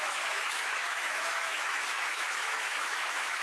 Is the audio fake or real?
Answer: fake